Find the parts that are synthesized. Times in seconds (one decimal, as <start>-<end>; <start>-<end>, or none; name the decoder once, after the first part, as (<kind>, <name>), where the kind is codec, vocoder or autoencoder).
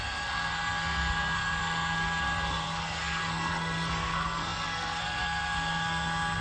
0.0-6.4 (codec, SNAC)